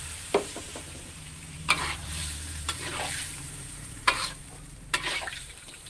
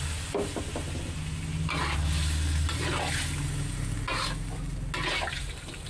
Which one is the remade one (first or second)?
first